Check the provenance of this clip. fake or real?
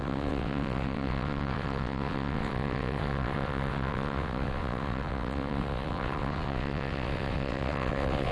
fake